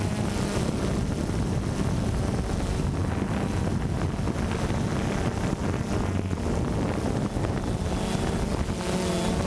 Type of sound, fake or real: real